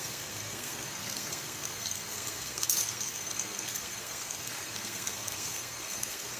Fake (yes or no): yes